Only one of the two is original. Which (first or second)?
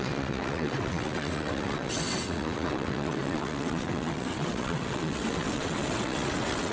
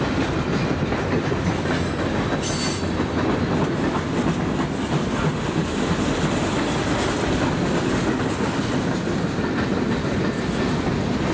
second